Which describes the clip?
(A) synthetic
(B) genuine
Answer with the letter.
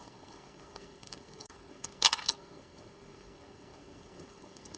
A